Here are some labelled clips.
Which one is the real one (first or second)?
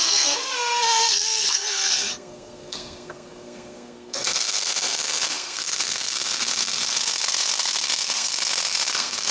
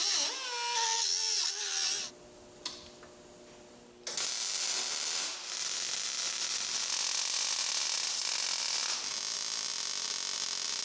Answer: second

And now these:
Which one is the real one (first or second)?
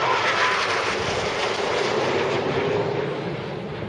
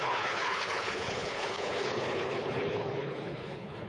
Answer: first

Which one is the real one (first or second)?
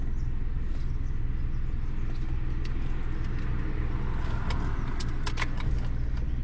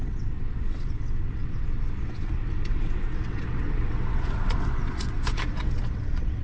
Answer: first